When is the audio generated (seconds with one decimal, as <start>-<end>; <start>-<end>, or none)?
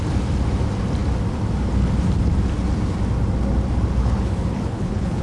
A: 4.0-5.2